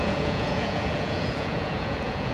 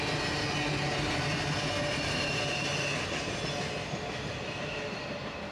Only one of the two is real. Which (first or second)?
second